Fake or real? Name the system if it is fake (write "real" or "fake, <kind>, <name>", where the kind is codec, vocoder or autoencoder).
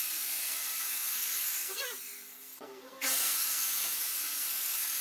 fake, codec, SNAC